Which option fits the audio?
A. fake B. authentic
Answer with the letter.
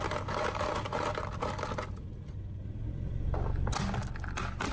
B